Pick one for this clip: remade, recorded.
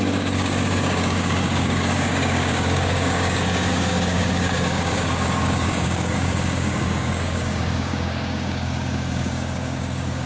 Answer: remade